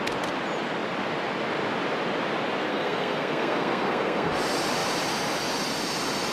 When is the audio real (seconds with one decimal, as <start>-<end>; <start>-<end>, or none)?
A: 0.0-2.7; 4.3-6.3